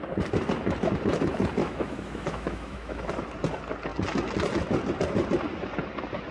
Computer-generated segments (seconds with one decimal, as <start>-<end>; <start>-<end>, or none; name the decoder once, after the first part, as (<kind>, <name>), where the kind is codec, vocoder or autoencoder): 1.6-3.1 (autoencoder, DAC-VAE)